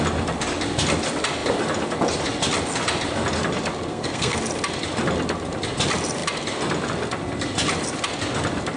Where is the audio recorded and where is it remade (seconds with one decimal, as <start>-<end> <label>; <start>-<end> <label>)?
0.0-3.9 recorded; 3.9-4.4 remade; 4.4-8.8 recorded